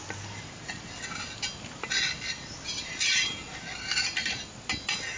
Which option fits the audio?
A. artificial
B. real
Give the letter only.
B